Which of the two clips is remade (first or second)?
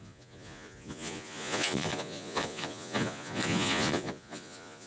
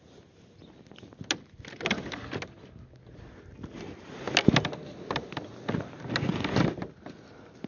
first